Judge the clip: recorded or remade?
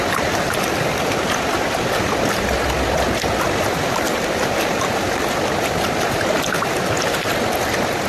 recorded